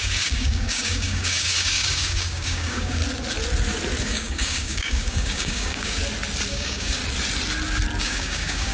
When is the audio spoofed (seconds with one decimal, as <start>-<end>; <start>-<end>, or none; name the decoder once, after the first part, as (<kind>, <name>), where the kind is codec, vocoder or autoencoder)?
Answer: 0.0-3.0 (codec, DAC); 4.0-6.0; 6.5-7.0; 8.0-8.7